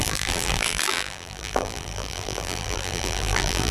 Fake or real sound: fake